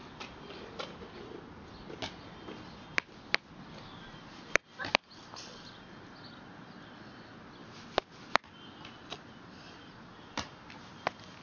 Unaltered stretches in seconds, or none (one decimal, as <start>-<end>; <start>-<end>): 0.0-11.4